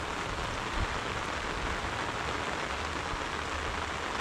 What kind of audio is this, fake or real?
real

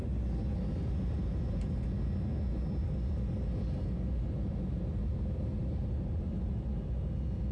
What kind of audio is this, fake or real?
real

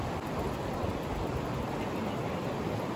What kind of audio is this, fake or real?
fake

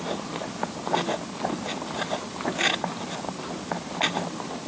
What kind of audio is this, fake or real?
real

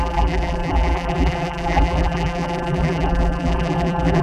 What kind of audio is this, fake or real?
fake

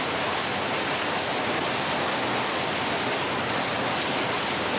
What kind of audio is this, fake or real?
real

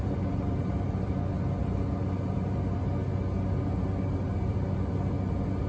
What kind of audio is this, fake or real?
real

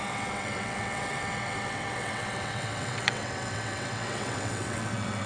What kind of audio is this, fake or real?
fake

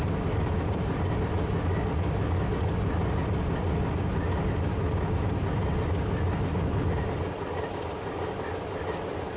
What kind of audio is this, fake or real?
real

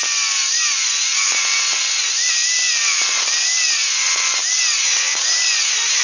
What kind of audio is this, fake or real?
real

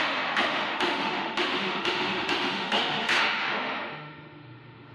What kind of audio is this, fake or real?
fake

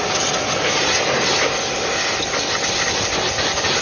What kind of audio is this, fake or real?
real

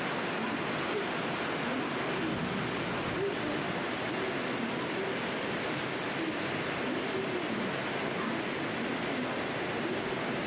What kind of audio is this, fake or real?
real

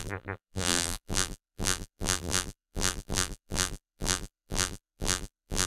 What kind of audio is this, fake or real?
fake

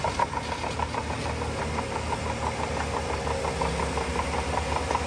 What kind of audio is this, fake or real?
real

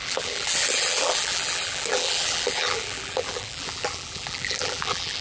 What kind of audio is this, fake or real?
fake